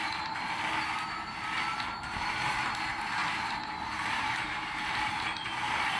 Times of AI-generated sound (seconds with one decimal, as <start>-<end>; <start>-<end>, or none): 3.2-5.1